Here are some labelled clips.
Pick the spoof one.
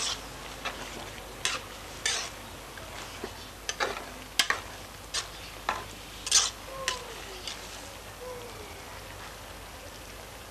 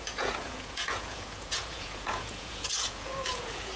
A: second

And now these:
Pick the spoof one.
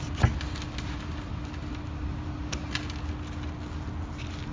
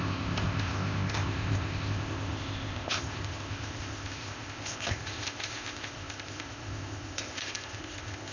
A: second